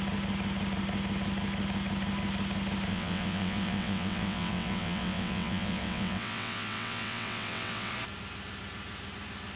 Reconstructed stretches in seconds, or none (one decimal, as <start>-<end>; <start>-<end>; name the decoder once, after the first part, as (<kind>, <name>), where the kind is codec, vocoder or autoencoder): 2.9-7.9 (vocoder, WaveNeXt)

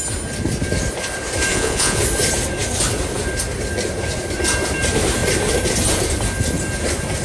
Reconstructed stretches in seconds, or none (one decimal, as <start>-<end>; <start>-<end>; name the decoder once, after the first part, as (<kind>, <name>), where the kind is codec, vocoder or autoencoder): 1.5-2.0 (vocoder, Vocos)

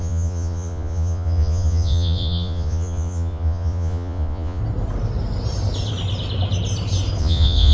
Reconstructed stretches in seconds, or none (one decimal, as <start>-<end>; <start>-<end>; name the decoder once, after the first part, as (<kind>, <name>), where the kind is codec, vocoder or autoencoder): 0.0-4.6 (vocoder, Vocos); 7.2-7.7

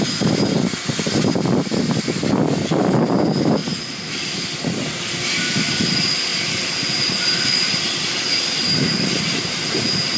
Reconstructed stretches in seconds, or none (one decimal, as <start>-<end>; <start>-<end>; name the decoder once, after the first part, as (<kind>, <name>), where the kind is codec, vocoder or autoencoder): none

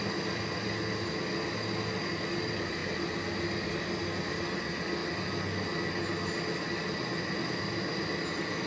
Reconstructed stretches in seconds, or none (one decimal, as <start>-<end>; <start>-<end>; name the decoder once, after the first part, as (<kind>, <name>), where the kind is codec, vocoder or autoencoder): none

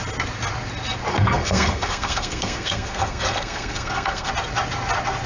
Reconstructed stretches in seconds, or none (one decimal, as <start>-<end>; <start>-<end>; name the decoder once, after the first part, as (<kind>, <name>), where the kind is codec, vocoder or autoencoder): 1.1-4.3 (codec, SNAC)

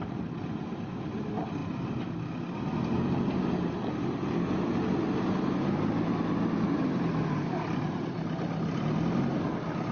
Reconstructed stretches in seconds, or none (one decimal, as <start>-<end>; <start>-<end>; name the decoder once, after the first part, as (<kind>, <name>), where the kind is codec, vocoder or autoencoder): none